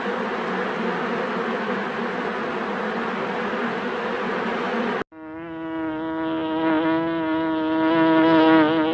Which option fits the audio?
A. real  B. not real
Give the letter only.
A